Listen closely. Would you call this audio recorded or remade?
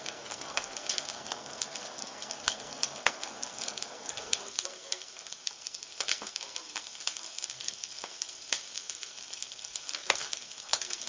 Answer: remade